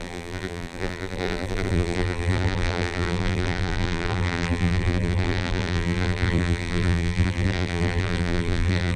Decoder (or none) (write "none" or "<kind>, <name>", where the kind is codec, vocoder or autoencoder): vocoder, BigVGAN v2